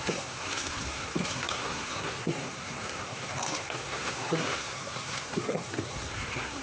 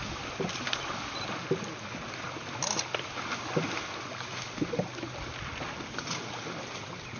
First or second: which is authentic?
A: second